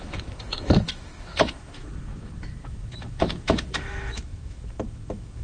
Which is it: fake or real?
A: fake